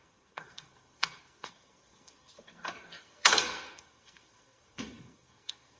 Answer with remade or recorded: remade